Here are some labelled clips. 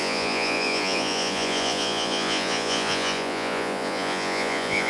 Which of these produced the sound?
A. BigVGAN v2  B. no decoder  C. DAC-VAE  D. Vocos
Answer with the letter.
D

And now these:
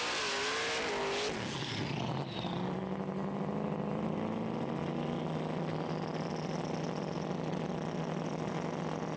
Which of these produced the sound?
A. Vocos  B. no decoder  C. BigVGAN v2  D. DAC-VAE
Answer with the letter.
B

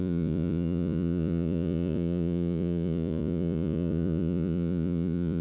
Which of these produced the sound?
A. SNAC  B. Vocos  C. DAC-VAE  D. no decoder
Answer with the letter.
B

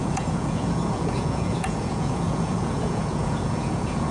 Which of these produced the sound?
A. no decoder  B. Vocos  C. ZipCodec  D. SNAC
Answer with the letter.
B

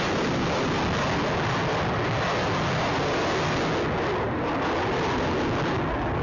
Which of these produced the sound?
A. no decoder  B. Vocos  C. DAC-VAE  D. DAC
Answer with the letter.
A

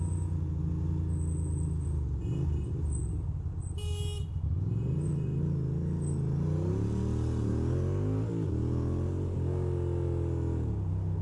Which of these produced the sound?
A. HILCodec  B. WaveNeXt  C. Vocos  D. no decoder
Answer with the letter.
D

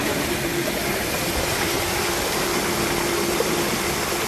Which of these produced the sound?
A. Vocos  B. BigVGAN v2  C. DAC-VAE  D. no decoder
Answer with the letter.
D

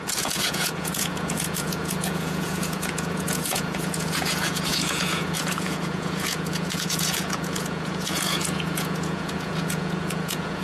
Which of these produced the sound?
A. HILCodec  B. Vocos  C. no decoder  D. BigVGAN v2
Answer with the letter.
B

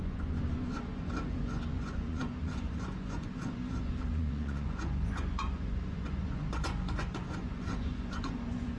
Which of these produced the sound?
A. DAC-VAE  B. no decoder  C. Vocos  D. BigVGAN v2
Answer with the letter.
C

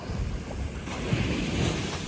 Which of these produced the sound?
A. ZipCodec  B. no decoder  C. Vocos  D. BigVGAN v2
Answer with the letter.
B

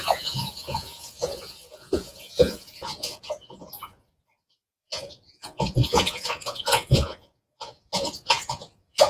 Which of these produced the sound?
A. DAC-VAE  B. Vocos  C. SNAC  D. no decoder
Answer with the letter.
B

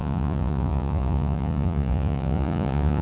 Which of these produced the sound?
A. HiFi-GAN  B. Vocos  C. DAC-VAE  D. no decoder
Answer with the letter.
B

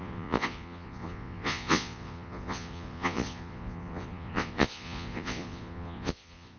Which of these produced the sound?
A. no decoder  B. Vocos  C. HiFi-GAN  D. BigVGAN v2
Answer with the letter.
B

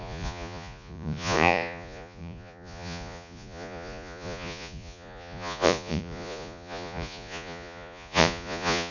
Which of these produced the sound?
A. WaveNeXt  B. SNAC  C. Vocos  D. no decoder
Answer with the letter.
C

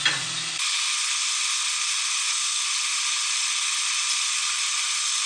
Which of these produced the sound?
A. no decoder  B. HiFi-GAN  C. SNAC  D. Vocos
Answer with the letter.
A